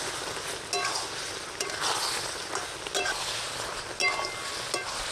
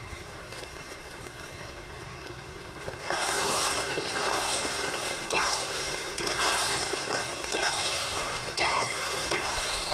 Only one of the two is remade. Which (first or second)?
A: second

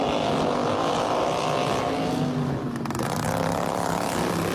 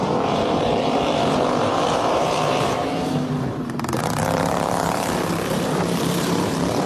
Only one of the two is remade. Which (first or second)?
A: second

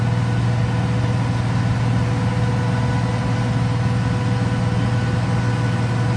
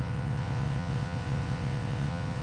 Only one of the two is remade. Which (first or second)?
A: second